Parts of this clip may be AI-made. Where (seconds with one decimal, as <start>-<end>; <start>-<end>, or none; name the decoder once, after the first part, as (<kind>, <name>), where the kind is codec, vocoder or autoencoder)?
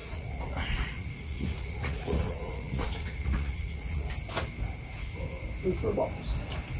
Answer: 0.0-4.1 (vocoder, Vocos)